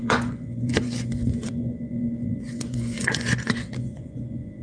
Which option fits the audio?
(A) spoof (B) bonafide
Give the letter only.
A